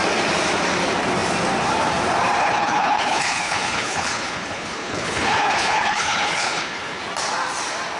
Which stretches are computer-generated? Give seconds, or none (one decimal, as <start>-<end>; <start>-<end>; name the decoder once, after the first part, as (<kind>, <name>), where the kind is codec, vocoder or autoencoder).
2.4-7.0 (codec, HILCodec)